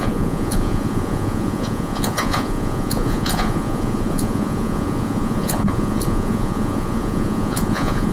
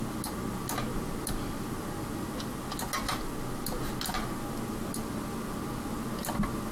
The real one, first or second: second